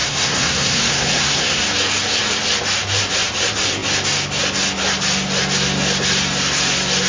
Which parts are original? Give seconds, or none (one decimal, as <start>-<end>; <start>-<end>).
1.6-7.1